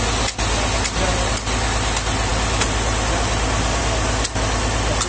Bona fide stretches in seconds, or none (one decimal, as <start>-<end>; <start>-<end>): 0.0-5.1